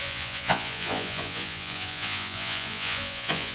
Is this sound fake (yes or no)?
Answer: yes